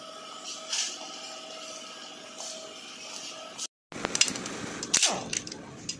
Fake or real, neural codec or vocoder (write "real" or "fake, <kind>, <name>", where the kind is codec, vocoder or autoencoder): real